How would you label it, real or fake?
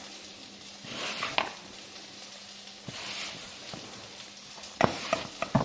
real